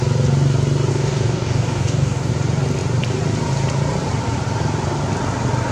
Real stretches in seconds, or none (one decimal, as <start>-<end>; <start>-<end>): 0.0-0.9; 2.3-5.7